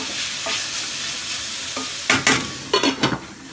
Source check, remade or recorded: recorded